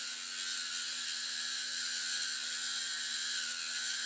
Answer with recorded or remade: recorded